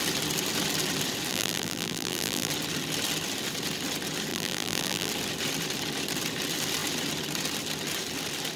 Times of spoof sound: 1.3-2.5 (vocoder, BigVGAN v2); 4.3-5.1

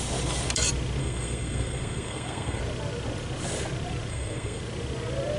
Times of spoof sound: 1.0-2.6 (codec, SNAC); 4.1-4.6